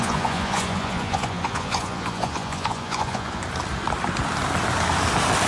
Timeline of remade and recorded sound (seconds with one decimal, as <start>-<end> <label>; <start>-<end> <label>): 0.0-3.4 remade; 3.4-5.5 recorded